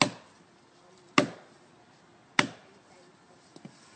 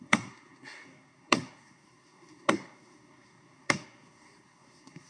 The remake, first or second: second